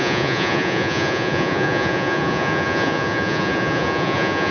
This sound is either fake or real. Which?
fake